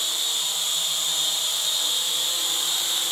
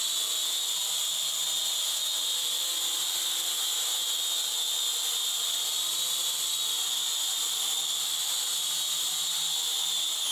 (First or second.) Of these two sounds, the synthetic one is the first